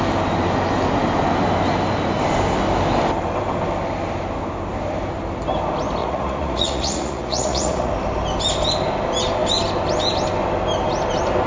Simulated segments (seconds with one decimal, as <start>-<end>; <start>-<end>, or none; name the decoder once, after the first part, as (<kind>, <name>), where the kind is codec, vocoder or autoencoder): 6.0-7.9 (vocoder, Vocos)